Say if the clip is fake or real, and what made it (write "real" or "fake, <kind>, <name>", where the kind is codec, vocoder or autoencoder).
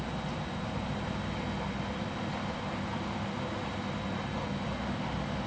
real